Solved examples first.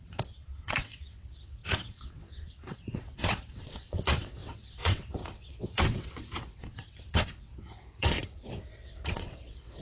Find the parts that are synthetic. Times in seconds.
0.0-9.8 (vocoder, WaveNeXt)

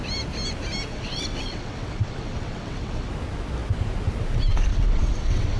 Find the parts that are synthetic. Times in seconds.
0.9-3.1 (vocoder, WaveNeXt); 4.7-5.6

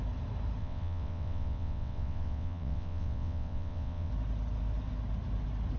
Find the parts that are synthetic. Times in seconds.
0.6-4.1 (vocoder, WaveNeXt)

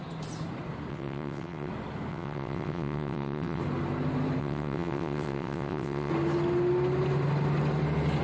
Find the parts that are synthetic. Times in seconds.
0.9-1.7 (vocoder, WaveNeXt); 2.1-3.6; 4.4-6.1

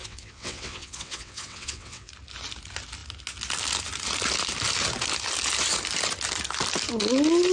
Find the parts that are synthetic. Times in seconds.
0.0-2.1 (vocoder, WaveNeXt)

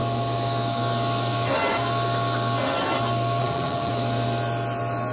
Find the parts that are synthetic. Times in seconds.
3.4-3.9 (vocoder, WaveNeXt)